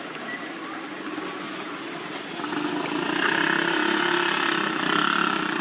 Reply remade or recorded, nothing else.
recorded